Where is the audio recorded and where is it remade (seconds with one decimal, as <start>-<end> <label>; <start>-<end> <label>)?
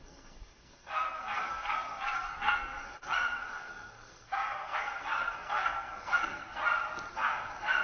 0.0-6.6 remade; 6.6-7.1 recorded; 7.1-7.8 remade